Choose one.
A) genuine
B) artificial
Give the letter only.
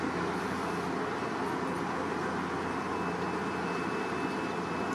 A